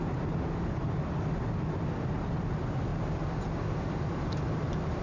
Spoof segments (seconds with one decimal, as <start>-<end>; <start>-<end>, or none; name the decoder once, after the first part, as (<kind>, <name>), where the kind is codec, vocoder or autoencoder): none